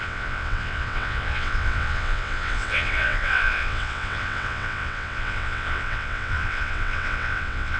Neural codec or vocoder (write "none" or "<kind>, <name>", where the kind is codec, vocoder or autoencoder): vocoder, WaveNeXt